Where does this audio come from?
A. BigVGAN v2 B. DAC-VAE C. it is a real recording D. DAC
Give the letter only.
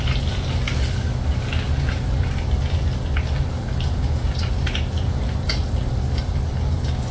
C